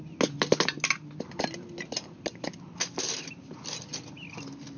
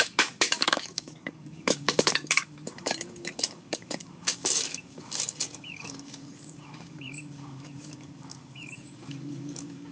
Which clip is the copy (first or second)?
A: second